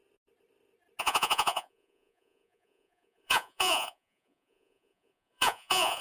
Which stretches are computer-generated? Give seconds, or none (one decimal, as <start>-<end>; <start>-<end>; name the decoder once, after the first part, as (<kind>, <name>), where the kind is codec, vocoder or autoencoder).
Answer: 1.0-6.0 (vocoder, Vocos)